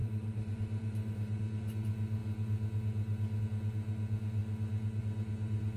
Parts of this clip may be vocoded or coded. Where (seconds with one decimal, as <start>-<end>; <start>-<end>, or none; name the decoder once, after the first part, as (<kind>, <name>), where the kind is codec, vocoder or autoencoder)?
0.0-1.4 (vocoder, BigVGAN v2)